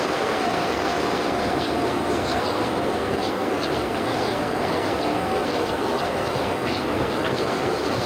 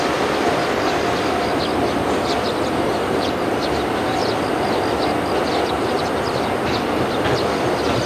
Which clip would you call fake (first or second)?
first